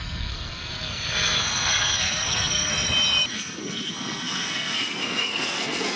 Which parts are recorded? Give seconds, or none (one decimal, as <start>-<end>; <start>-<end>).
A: 2.7-3.3